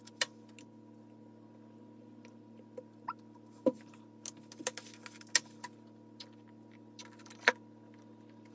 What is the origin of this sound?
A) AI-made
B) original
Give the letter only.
B